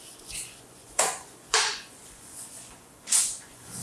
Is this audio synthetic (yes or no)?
yes